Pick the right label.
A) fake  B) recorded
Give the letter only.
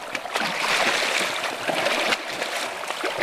B